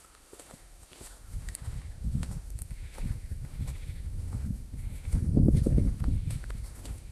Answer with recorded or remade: remade